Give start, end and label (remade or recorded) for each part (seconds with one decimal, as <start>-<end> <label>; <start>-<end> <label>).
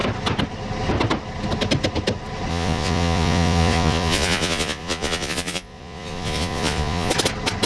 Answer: 0.0-2.5 recorded; 2.5-7.1 remade; 7.1-7.7 recorded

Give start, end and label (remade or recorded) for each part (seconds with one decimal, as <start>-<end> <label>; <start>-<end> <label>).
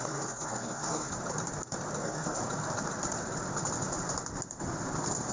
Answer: 0.0-1.1 remade; 1.1-2.0 recorded; 2.0-2.4 remade; 2.4-5.3 recorded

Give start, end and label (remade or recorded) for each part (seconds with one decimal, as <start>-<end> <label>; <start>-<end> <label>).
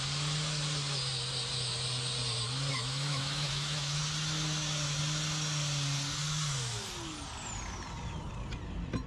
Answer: 0.0-2.7 recorded; 2.7-4.0 remade; 4.0-9.1 recorded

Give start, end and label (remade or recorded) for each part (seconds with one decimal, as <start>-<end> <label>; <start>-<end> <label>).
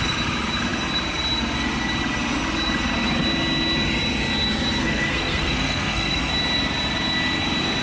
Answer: 0.0-4.8 recorded; 4.8-6.3 remade; 6.3-7.8 recorded